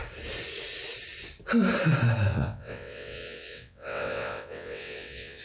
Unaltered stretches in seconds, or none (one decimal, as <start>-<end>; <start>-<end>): 0.0-2.3